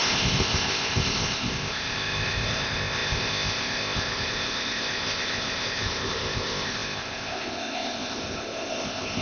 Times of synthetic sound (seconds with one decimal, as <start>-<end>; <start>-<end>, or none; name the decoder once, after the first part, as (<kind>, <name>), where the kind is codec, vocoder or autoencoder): 0.0-9.2 (codec, ZipCodec)